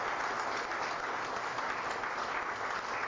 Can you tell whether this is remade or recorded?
recorded